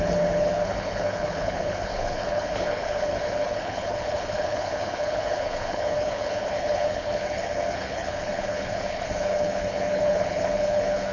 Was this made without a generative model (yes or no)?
no